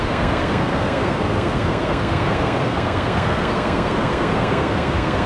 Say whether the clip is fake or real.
fake